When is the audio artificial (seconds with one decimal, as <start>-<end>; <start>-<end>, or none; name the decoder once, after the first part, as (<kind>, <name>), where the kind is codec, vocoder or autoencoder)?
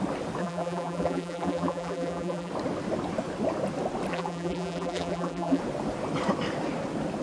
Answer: 0.4-2.5 (vocoder, BigVGAN v2); 4.1-5.6